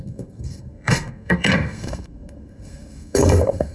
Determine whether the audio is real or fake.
fake